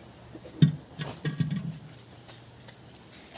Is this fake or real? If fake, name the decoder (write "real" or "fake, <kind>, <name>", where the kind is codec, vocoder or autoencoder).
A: real